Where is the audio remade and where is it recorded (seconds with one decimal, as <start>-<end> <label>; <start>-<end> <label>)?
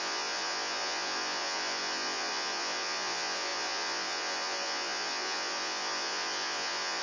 0.0-7.0 remade